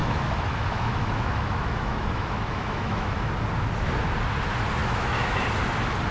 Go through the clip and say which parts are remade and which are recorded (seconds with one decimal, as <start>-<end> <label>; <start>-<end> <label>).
0.0-3.3 remade; 3.3-4.8 recorded; 4.8-5.4 remade; 5.4-6.1 recorded